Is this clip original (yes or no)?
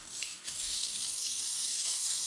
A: no